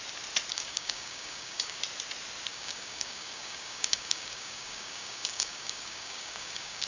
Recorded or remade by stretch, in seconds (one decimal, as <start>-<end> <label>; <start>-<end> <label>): 0.0-0.5 recorded; 0.5-1.8 remade; 1.8-2.5 recorded; 2.5-6.9 remade